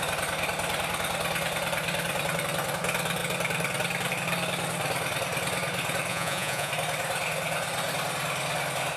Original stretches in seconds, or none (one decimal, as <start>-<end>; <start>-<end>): 0.0-6.1; 6.7-9.0